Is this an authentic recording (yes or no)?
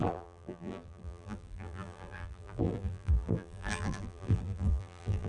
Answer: no